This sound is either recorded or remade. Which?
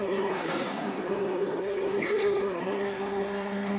remade